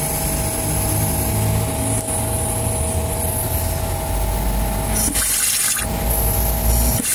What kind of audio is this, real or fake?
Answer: real